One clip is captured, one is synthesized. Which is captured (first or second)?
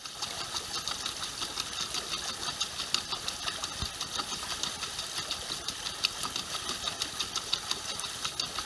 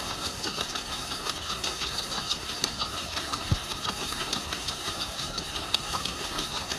first